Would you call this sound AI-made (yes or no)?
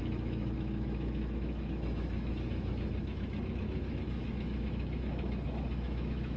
yes